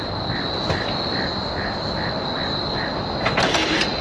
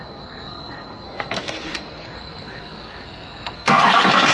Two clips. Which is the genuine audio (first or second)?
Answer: first